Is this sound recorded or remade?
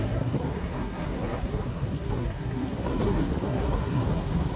remade